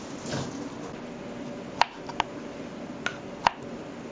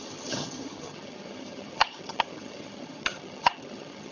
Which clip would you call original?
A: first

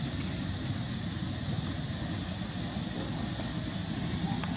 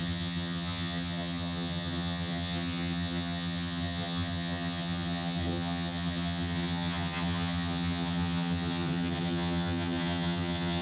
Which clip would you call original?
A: first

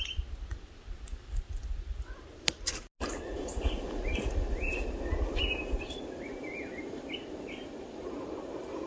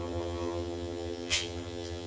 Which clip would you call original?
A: first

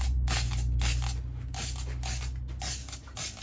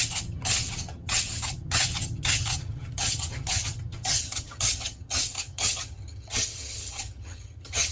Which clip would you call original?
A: first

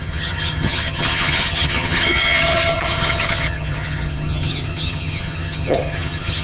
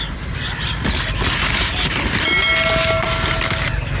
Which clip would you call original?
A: second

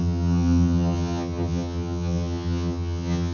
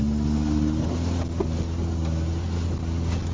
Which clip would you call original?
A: second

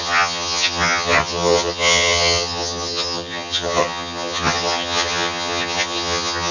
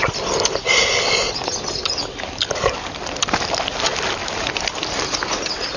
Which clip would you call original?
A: second